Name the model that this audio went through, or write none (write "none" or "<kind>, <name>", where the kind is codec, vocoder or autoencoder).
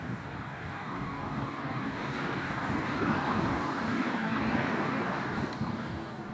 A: codec, DAC